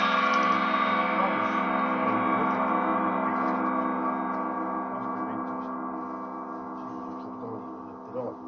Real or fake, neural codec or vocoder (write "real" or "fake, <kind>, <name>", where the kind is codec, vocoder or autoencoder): real